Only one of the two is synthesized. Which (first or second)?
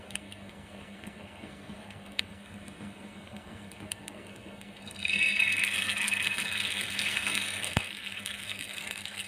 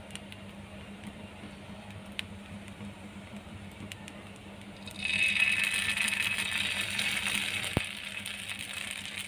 first